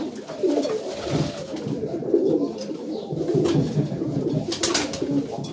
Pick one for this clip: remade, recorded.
recorded